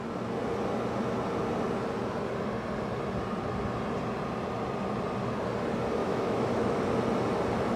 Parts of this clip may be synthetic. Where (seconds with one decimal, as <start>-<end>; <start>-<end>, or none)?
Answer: 6.0-6.8